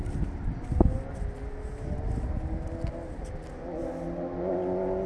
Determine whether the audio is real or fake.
real